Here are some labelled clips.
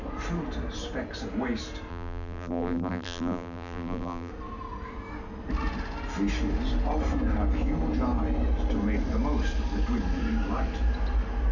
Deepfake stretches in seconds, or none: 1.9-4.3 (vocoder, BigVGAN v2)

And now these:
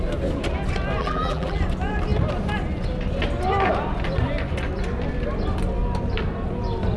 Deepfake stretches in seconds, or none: 1.0-1.6 (vocoder, BigVGAN v2)

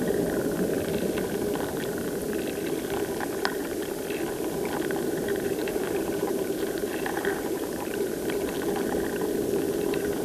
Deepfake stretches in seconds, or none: 5.6-8.1 (vocoder, BigVGAN v2)

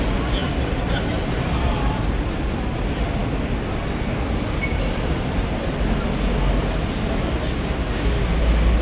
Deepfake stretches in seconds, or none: none

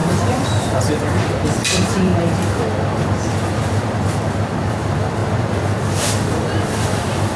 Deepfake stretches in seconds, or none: 0.0-2.1 (vocoder, BigVGAN v2); 4.7-5.2; 5.8-7.4